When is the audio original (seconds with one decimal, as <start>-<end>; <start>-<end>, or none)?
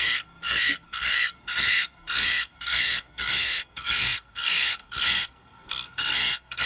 none